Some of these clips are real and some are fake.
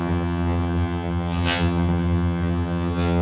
fake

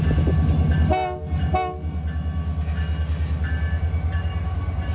real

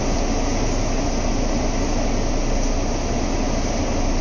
real